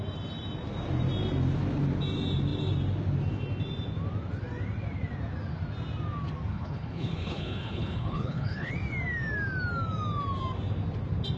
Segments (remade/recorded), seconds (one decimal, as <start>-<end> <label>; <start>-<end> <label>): 0.0-6.5 recorded; 6.5-8.7 remade; 8.7-11.4 recorded